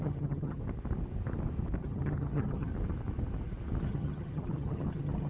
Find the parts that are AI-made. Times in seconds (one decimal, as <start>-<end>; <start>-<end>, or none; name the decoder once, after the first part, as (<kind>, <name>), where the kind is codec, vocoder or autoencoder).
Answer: 0.0-0.6 (vocoder, HiFi-GAN); 1.8-2.7; 3.8-5.3

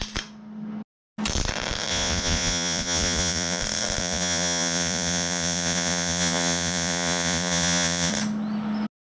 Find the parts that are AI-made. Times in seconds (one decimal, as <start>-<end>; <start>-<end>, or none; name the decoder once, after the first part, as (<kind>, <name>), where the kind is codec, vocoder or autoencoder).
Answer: 1.9-3.6 (vocoder, Vocos); 4.0-8.1

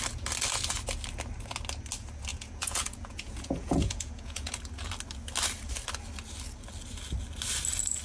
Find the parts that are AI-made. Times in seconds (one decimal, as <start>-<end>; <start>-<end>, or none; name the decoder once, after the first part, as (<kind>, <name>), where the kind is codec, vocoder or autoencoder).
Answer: 2.3-4.6 (vocoder, Vocos)

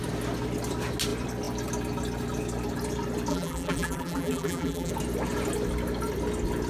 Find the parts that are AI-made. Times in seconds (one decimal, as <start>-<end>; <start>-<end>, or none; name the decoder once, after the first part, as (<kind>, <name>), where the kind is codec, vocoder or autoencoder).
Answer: 3.3-4.9 (vocoder, BigVGAN v2)

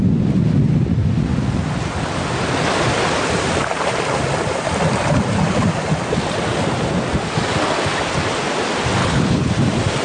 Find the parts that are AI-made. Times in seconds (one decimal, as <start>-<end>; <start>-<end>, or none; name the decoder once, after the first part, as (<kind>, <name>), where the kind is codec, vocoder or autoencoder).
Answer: 9.0-9.5 (codec, HILCodec)

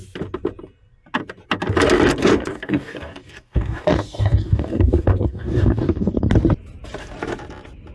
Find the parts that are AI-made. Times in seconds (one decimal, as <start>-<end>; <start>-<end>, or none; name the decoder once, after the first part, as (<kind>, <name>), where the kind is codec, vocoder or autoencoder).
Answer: 2.2-6.3 (codec, DAC)

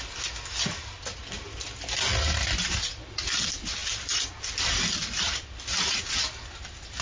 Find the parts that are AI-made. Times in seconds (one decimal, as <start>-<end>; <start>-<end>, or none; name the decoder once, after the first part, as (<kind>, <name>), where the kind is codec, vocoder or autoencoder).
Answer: none